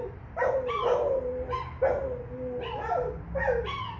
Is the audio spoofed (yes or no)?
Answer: no